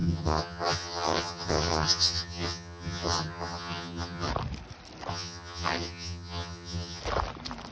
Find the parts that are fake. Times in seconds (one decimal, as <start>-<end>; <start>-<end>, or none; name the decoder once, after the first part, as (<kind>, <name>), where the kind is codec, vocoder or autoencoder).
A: 0.0-4.3 (vocoder, HiFi-GAN); 5.1-7.0